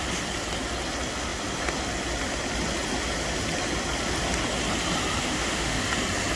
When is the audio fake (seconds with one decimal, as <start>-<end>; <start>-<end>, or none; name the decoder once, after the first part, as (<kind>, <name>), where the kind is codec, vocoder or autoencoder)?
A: 5.2-5.8 (autoencoder, DAC-VAE)